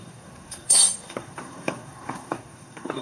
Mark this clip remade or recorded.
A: remade